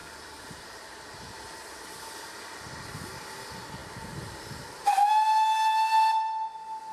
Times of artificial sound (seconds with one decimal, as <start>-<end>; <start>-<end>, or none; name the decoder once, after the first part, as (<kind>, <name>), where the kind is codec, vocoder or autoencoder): 0.0-3.0 (vocoder, BigVGAN v2)